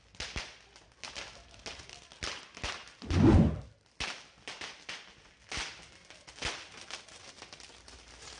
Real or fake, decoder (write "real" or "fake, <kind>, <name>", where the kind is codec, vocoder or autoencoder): real